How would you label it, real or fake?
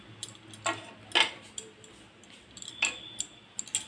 real